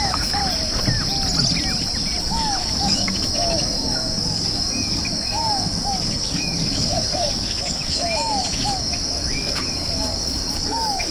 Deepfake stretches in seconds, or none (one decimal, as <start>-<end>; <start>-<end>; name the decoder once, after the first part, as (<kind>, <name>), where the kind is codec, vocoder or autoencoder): 0.0-0.4 (codec, DAC); 2.2-11.1

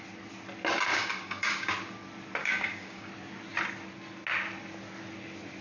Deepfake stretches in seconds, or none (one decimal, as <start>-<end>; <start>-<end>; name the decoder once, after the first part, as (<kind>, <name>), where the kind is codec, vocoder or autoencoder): 0.9-1.7 (codec, DAC); 2.4-3.1

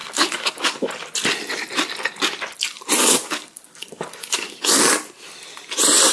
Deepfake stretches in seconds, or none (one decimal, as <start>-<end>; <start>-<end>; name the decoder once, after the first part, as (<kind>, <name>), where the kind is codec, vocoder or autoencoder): 0.0-0.9 (codec, DAC); 3.0-4.8

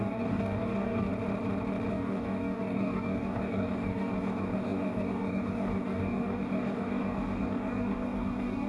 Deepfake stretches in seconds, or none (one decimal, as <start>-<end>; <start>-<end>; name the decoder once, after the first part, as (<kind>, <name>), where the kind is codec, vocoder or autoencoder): 0.0-1.1 (codec, DAC); 1.9-8.7

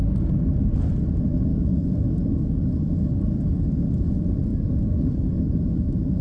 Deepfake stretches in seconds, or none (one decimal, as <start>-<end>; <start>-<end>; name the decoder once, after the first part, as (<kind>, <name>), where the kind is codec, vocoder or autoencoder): 0.0-0.5 (codec, DAC); 1.5-3.9; 4.5-5.6

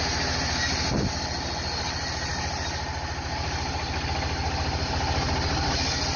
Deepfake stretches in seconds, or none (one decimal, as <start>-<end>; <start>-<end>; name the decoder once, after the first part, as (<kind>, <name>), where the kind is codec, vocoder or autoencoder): none